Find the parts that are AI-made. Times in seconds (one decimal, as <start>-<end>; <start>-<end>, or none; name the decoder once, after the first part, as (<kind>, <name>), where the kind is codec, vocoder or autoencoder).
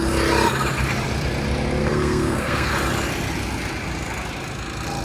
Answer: 1.8-2.7 (codec, SNAC)